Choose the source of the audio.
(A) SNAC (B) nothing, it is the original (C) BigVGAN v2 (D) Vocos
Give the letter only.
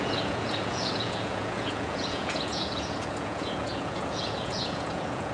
D